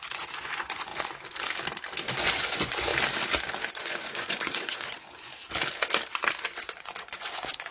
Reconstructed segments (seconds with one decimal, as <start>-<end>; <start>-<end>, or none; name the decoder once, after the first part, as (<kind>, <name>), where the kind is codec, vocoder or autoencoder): 0.0-0.9 (vocoder, Vocos); 2.1-2.9; 3.7-5.3; 6.4-7.7